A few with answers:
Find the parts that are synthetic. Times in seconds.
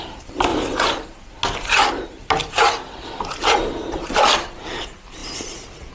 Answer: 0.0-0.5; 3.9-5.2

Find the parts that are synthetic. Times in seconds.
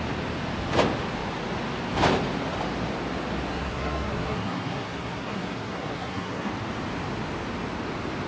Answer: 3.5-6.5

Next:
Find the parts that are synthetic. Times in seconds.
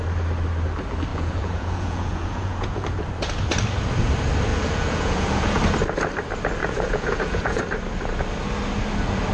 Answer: 1.1-2.8; 4.5-5.6; 6.6-7.6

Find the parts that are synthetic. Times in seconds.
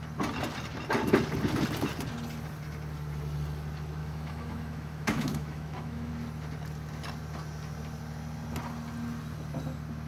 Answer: 4.0-6.1